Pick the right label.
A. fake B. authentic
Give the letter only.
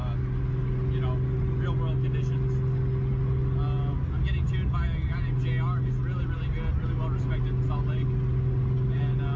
B